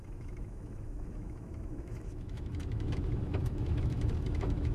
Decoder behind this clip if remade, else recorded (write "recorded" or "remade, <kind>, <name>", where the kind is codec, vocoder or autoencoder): remade, autoencoder, DAC-VAE